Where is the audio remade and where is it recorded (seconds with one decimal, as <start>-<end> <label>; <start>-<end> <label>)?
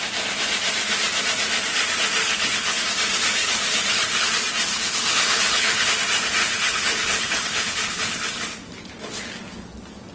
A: 0.0-2.2 recorded; 2.2-2.8 remade; 2.8-3.4 recorded; 3.4-4.3 remade; 4.3-4.7 recorded; 4.7-5.9 remade; 5.9-6.4 recorded; 6.4-8.4 remade; 8.4-10.1 recorded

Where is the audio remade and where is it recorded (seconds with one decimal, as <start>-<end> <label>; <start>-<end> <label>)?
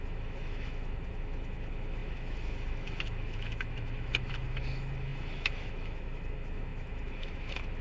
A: 0.0-7.8 remade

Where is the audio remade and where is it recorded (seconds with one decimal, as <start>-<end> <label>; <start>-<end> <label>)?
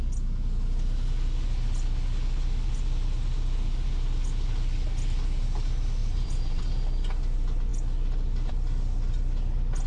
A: 0.0-6.0 recorded; 6.0-6.6 remade; 6.6-9.9 recorded